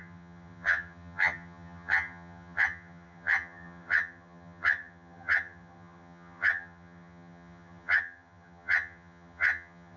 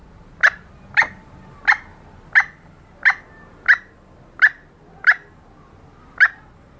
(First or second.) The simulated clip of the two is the first